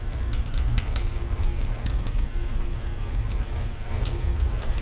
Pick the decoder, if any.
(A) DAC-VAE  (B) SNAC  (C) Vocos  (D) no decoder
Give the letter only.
B